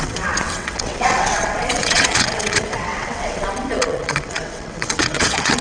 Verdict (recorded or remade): remade